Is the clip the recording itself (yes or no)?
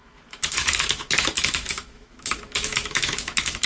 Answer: no